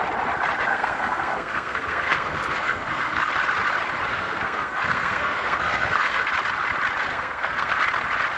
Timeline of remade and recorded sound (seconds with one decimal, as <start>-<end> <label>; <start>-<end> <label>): 0.0-0.7 recorded; 0.7-3.3 remade; 3.3-4.1 recorded; 4.1-6.3 remade; 6.3-7.1 recorded; 7.1-7.8 remade; 7.8-8.4 recorded